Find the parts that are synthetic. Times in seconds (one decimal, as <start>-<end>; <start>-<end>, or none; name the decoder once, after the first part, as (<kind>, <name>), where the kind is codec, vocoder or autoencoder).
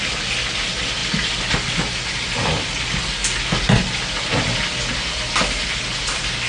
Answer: none